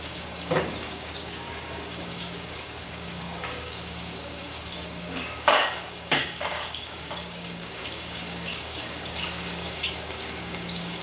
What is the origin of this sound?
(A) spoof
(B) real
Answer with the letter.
A